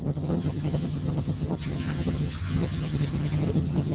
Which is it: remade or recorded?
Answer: remade